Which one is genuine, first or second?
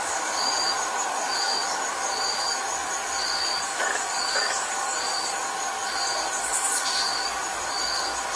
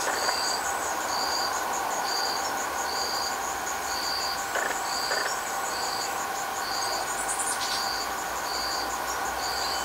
second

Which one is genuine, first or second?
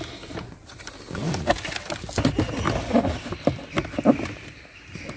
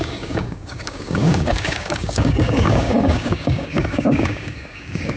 first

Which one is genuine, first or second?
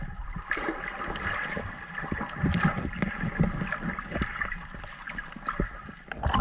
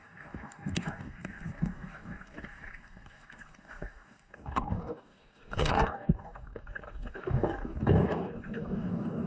first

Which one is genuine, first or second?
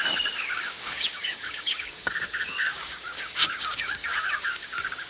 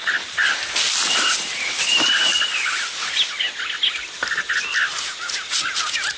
second